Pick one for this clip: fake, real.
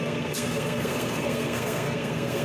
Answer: fake